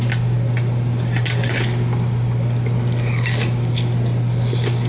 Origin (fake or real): real